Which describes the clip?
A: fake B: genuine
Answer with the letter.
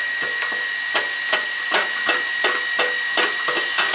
B